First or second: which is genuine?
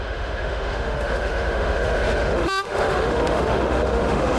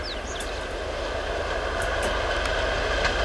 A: second